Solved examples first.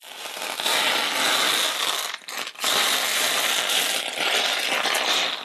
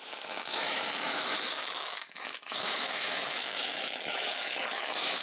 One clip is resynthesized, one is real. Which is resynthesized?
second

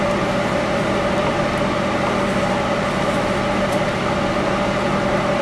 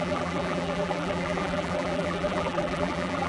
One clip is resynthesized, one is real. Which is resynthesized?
second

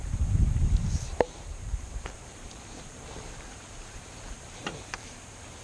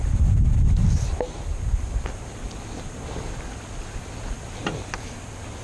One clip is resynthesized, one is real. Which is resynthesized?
first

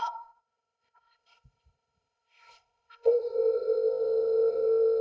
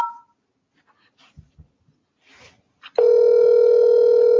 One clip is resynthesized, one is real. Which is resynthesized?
first